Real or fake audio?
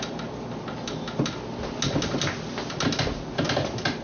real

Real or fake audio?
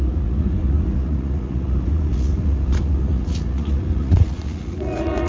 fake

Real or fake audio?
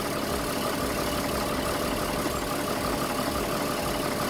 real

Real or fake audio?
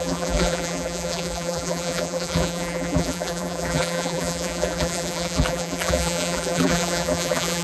fake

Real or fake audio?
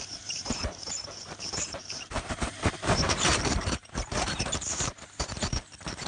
fake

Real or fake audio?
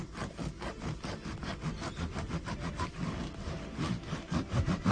real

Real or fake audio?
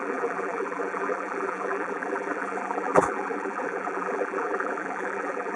fake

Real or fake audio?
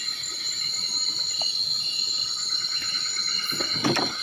real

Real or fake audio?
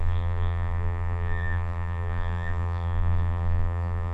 fake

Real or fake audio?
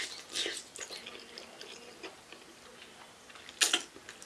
real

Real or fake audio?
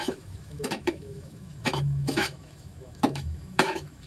fake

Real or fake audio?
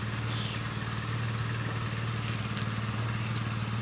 real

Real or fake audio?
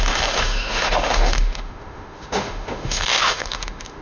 fake